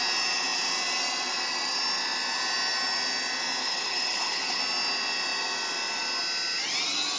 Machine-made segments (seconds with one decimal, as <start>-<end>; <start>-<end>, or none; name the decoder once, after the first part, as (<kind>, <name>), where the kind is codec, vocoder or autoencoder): 3.6-4.6 (codec, HILCodec)